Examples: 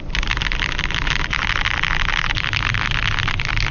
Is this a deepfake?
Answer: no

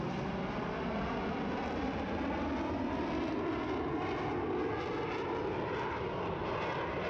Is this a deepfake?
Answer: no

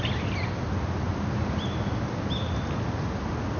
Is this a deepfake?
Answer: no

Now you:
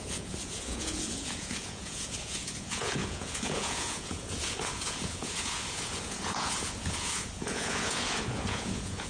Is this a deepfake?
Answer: yes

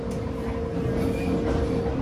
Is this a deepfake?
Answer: no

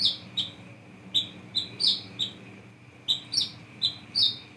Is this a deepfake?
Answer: yes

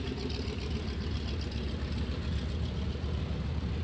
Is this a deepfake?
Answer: no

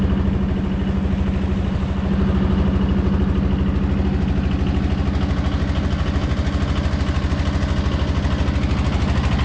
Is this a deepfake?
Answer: no